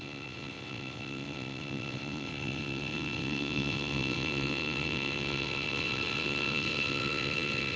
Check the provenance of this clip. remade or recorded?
remade